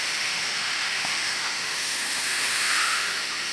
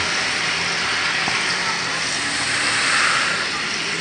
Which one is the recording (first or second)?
second